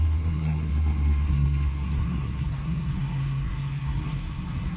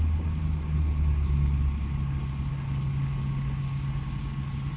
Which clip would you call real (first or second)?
second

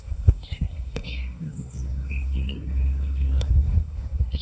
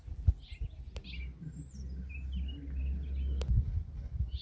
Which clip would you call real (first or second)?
second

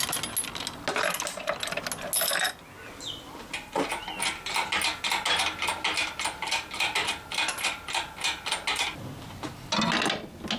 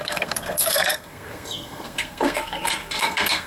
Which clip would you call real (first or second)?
first